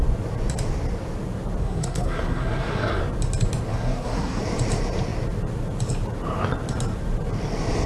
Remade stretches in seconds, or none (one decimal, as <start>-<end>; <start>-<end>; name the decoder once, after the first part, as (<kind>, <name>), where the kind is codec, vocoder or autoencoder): 1.6-3.0 (codec, SNAC); 3.7-4.4